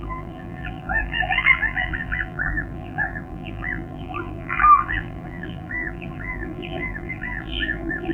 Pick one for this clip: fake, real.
fake